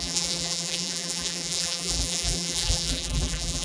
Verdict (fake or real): fake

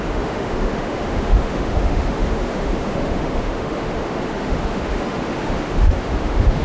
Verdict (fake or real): fake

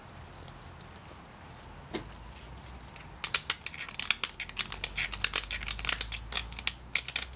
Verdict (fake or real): real